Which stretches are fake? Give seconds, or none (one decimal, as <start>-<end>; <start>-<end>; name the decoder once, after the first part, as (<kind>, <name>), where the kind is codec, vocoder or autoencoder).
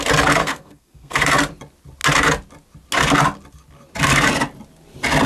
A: 0.4-1.2 (codec, SNAC)